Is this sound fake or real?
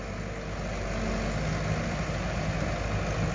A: real